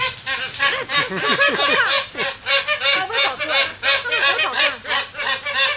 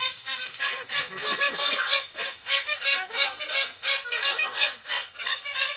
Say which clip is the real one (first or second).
first